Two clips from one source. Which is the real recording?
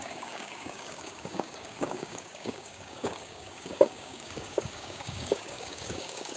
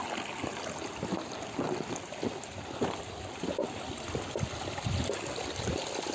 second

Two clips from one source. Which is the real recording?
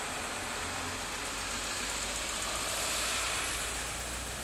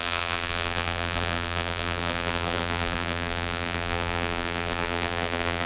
first